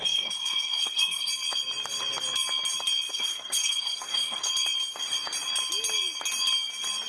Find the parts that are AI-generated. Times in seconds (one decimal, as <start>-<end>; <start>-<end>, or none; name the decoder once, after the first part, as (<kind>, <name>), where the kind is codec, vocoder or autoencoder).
0.0-1.3 (codec, SNAC); 3.1-4.5